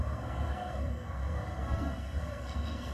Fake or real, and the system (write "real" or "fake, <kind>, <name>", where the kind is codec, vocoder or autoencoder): fake, codec, SNAC